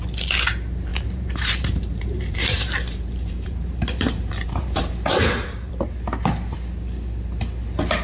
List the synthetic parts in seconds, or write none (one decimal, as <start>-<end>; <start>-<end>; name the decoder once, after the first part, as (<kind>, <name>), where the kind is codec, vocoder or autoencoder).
0.9-5.7 (vocoder, BigVGAN v2)